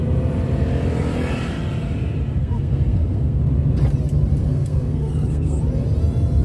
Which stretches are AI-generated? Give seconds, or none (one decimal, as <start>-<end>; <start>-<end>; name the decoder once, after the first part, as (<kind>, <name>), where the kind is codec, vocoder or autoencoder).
2.4-3.4 (codec, SNAC); 4.4-5.6